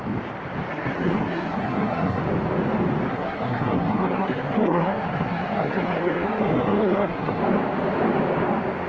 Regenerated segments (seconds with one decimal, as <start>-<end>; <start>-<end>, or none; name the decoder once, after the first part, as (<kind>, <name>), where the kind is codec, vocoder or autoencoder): 0.7-2.2 (codec, SNAC); 3.1-7.4